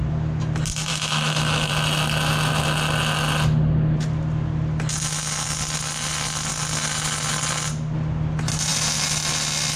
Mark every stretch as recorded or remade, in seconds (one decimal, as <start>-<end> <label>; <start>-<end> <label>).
0.0-0.9 recorded; 0.9-1.7 remade; 1.7-9.8 recorded